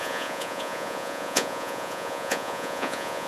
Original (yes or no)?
no